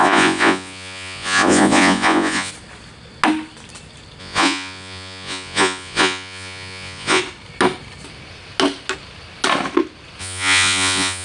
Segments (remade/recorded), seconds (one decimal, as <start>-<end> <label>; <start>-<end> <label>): 0.0-2.5 remade; 2.5-4.2 recorded; 4.2-7.2 remade; 7.2-10.2 recorded; 10.2-11.2 remade